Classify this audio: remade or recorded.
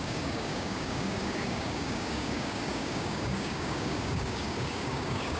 remade